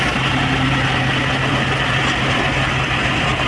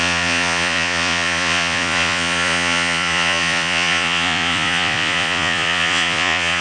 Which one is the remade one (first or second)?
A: second